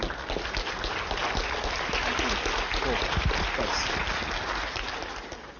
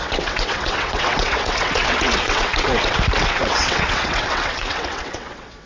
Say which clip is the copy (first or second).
second